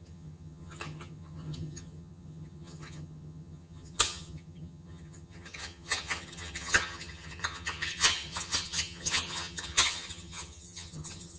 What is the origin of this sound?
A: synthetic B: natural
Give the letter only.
A